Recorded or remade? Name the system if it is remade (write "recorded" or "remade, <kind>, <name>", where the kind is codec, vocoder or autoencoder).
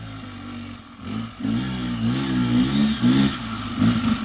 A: recorded